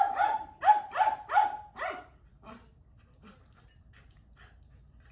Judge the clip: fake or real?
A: fake